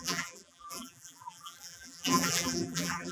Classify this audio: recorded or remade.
remade